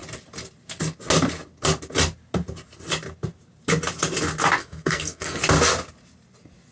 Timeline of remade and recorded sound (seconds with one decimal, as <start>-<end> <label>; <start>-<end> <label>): 0.0-4.6 recorded; 4.6-5.4 remade; 5.4-6.7 recorded